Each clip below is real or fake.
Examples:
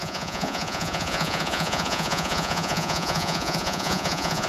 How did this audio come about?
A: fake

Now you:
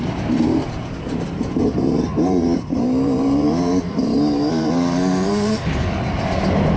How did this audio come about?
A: fake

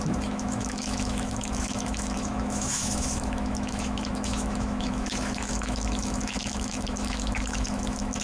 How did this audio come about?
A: fake